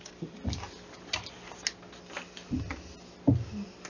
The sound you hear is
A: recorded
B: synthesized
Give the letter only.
A